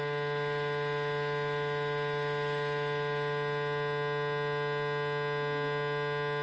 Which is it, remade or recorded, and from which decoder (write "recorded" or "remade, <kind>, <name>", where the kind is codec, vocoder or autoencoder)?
recorded